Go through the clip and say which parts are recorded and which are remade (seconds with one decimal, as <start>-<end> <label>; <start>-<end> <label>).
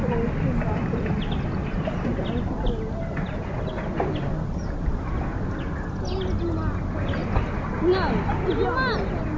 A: 0.0-9.4 recorded